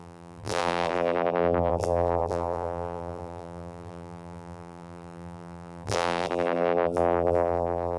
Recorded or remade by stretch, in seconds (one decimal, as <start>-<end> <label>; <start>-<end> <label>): 0.0-8.0 remade